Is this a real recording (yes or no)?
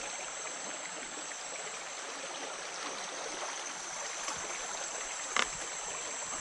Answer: yes